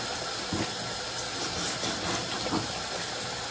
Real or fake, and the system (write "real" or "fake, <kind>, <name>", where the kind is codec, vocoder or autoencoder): real